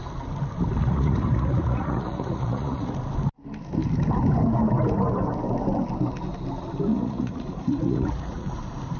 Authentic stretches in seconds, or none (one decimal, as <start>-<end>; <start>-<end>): 0.0-0.8; 2.9-6.9; 8.5-9.0